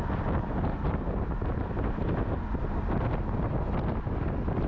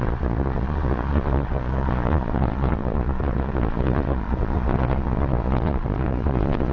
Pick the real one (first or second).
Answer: first